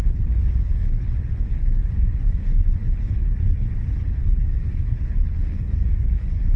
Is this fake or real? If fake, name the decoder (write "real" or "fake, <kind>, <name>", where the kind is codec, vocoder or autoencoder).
fake, codec, HILCodec